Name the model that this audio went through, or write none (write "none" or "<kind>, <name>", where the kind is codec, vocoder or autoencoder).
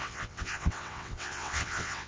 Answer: vocoder, WaveNeXt